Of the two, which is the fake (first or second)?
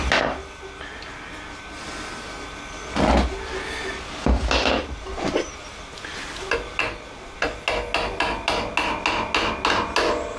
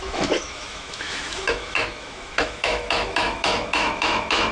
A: second